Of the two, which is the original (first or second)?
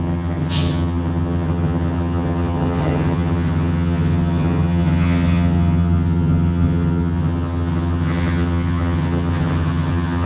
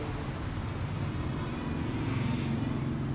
second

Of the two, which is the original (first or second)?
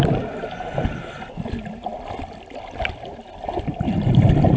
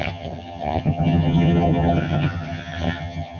first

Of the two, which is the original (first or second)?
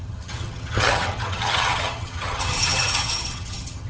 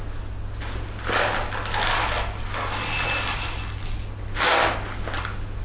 second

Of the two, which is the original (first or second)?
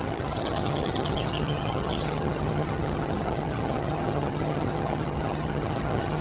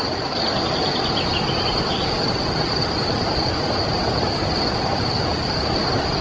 second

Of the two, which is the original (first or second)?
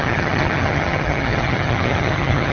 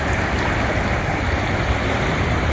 second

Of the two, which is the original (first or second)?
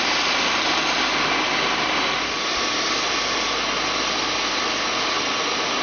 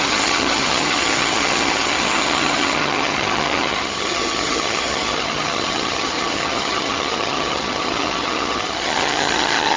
first